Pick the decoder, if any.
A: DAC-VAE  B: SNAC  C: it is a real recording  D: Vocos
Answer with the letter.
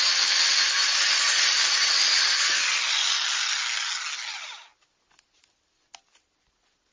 C